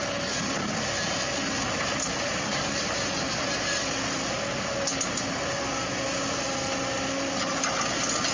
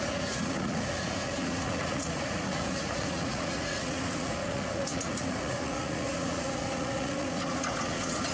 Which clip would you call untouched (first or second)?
first